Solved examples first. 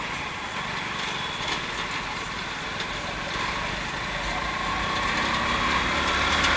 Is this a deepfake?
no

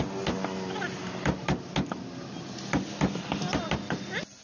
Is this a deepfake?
no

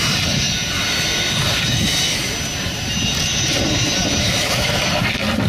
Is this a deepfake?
no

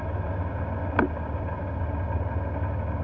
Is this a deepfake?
no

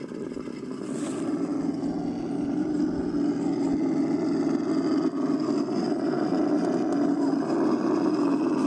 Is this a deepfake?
no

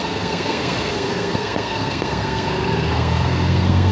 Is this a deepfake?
yes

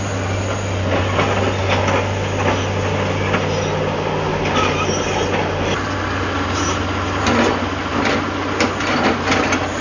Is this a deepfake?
no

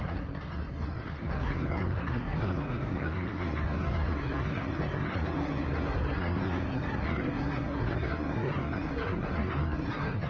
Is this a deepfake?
yes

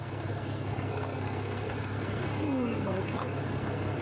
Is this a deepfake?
yes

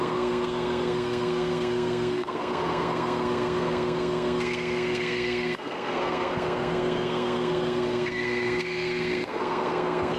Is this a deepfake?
yes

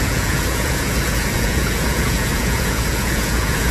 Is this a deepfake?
yes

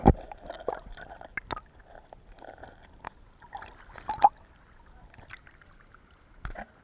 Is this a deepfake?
no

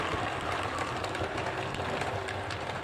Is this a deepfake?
no